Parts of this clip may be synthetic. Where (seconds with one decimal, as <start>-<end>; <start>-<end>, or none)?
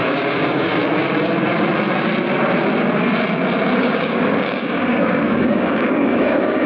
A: 0.0-0.8; 3.8-6.7